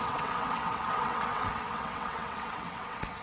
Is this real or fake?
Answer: fake